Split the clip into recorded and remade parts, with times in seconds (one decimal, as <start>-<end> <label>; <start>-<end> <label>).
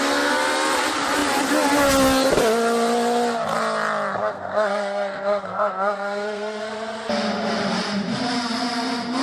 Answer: 0.0-4.2 recorded; 4.2-6.7 remade; 6.7-9.2 recorded